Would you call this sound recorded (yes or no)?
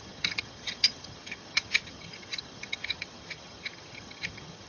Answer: no